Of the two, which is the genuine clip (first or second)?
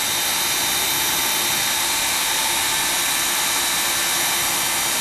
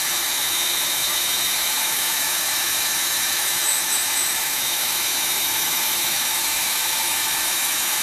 first